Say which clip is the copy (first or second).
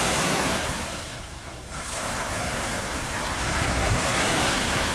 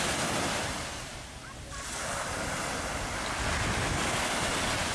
first